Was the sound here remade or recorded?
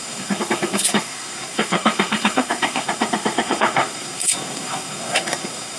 remade